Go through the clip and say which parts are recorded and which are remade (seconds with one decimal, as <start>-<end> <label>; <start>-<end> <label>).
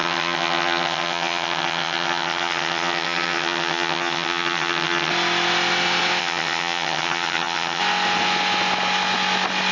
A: 0.0-5.1 remade; 5.1-6.2 recorded; 6.2-7.8 remade; 7.8-9.7 recorded